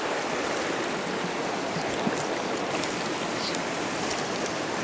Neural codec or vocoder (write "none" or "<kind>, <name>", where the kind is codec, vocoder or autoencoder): none